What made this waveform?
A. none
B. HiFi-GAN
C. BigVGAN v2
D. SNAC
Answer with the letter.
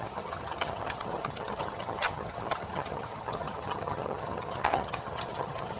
B